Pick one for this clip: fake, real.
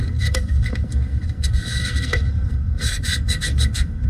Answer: fake